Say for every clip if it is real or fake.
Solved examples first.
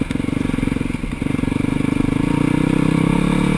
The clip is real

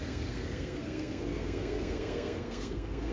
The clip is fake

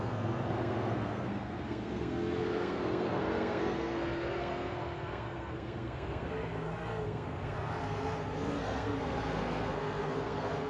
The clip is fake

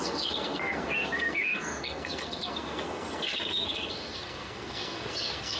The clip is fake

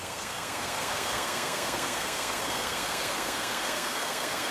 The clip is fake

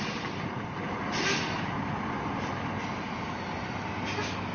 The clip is real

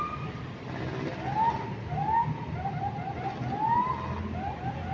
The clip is real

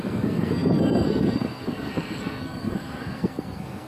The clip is fake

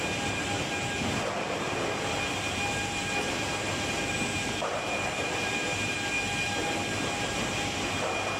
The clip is real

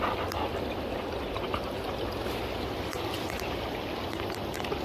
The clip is real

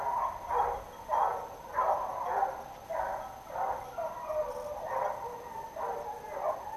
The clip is real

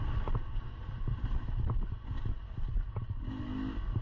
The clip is real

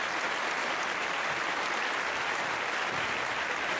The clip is real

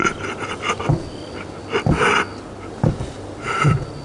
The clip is real